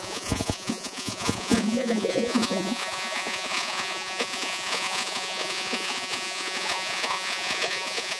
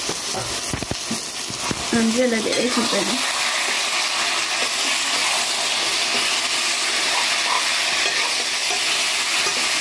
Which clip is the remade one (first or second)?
first